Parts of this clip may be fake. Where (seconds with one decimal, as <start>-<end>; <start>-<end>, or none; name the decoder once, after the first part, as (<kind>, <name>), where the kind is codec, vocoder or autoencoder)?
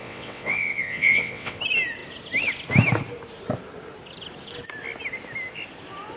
0.0-1.6 (vocoder, WaveNeXt)